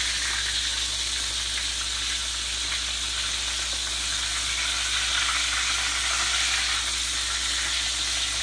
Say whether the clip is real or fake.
real